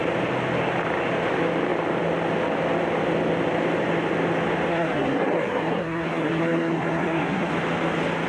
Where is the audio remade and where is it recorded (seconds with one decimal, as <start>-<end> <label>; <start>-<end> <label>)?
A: 0.0-4.7 recorded; 4.7-7.5 remade; 7.5-8.3 recorded